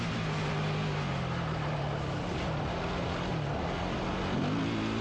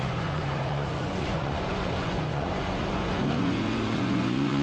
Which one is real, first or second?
first